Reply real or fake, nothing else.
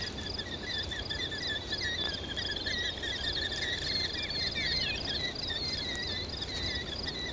real